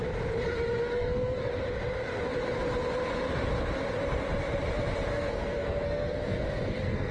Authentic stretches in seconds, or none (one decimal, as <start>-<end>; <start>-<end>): 0.0-0.8; 1.5-5.1